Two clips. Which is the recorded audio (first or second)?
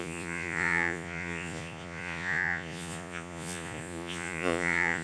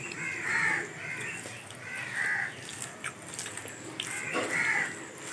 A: second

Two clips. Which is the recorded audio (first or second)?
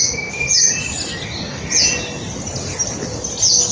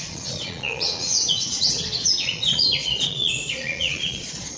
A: first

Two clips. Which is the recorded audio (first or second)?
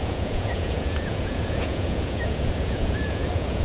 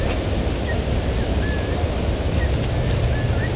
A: second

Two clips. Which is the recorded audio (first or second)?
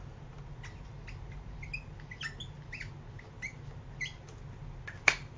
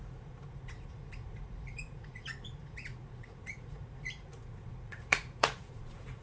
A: first